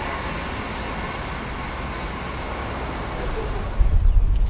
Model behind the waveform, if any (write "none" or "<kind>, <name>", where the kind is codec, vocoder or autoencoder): none